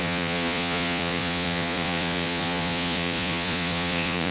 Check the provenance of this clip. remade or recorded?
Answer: remade